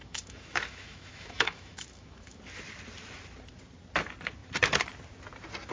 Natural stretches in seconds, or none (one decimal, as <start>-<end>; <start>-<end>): 2.4-5.7